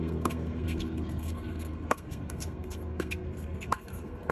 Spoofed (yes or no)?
yes